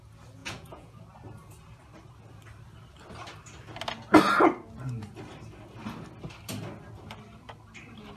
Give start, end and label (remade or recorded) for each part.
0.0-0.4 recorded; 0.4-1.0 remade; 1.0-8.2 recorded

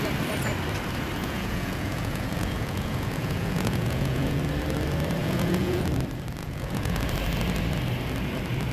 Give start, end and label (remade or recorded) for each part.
0.0-1.2 recorded; 1.2-4.4 remade; 4.4-5.2 recorded; 5.2-5.8 remade; 5.8-6.4 recorded; 6.4-7.0 remade; 7.0-8.7 recorded

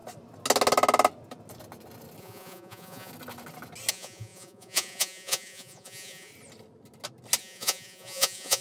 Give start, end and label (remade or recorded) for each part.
0.0-2.2 recorded; 2.2-3.1 remade; 3.1-3.9 recorded; 3.9-6.3 remade; 6.3-7.4 recorded; 7.4-8.6 remade